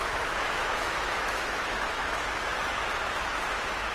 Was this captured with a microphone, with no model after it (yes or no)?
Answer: no